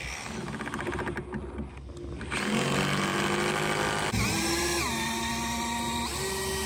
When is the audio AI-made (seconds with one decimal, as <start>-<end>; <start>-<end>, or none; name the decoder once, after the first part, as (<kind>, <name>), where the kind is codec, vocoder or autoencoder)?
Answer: none